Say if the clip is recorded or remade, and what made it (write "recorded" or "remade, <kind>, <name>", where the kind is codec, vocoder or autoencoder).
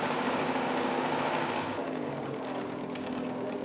remade, codec, DAC